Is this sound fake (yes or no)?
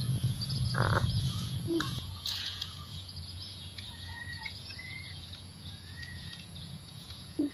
yes